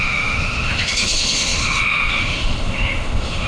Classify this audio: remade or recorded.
remade